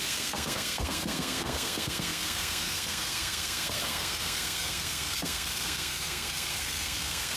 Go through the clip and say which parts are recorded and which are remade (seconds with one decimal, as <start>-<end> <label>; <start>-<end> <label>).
0.0-7.4 remade